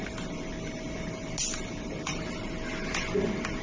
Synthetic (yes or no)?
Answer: no